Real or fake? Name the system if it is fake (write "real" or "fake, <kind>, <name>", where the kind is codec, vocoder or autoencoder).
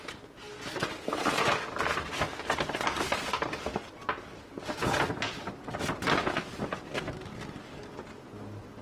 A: real